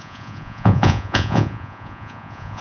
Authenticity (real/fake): fake